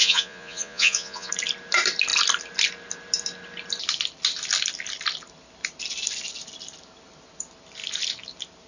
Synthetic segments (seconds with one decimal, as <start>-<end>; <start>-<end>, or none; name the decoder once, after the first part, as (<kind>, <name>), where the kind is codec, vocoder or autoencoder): 0.0-1.3 (vocoder, Vocos)